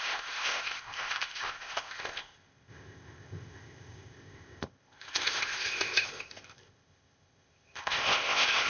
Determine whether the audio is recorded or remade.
remade